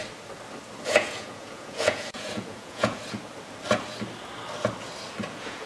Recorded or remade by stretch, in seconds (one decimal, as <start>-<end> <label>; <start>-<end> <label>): 0.0-0.9 recorded; 0.9-3.0 remade; 3.0-5.2 recorded; 5.2-5.7 remade